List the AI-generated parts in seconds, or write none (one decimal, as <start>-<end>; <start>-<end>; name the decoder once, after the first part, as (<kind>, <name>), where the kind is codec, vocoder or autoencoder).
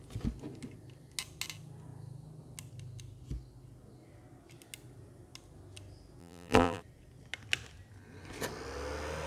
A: 6.2-6.8 (vocoder, BigVGAN v2)